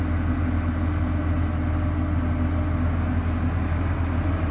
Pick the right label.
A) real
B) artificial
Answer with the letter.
A